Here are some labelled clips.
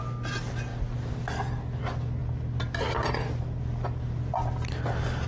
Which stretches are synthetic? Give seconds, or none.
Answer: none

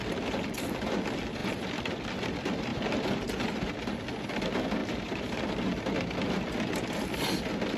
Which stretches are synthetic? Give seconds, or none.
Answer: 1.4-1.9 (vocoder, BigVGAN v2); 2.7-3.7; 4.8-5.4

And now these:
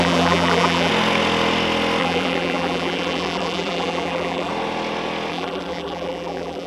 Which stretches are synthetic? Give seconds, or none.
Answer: 0.0-0.9 (vocoder, BigVGAN v2); 2.0-4.5; 5.3-6.7